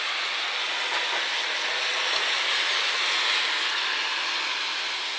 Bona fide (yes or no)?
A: yes